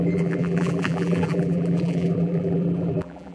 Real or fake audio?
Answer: fake